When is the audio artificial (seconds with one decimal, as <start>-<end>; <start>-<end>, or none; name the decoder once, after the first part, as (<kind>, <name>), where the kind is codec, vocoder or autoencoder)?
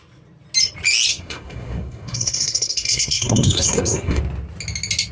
1.1-4.2 (codec, SNAC)